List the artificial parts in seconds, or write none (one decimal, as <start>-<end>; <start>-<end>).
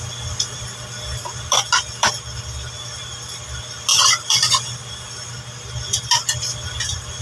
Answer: 3.9-4.9